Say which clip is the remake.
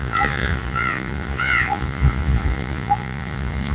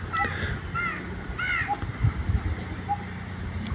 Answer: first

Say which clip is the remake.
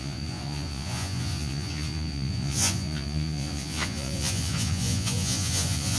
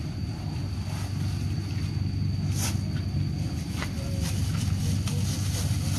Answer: first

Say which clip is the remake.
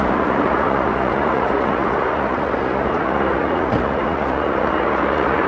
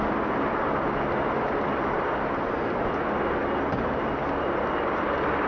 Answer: first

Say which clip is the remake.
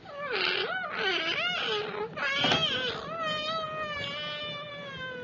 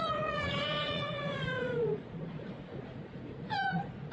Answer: second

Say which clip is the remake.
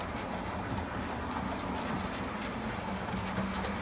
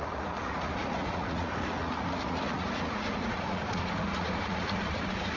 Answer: second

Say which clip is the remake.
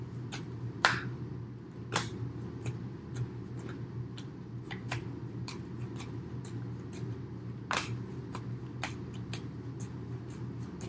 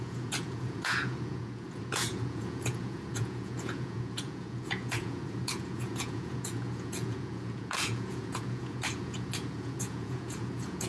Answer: second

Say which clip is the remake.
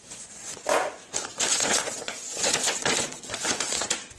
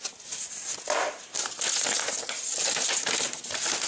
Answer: first